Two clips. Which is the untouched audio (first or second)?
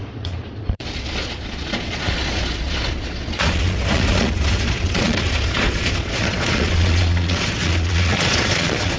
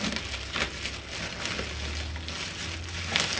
second